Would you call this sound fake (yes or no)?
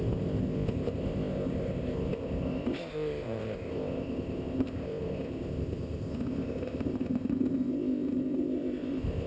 yes